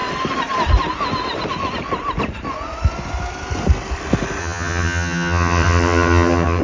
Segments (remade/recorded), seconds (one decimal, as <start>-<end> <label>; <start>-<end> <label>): 0.0-4.4 recorded; 4.4-6.6 remade